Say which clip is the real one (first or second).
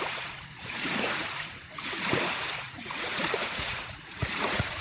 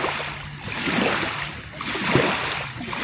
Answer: second